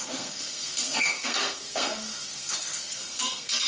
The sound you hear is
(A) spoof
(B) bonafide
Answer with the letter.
A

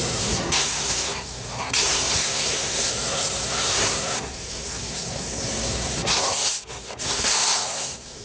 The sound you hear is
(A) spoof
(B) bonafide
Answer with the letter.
A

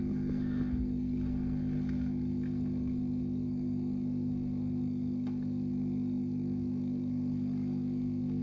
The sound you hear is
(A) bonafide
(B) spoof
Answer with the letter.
B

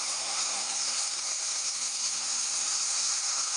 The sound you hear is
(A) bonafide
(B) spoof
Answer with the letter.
B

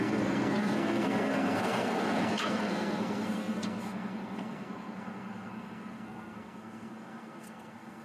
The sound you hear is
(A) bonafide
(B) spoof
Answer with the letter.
B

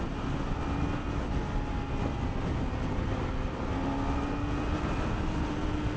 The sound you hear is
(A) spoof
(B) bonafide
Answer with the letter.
B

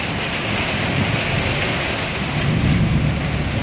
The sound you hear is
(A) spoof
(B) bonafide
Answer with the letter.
B